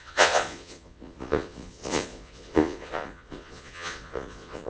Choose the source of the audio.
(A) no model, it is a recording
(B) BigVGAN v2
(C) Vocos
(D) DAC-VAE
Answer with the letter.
C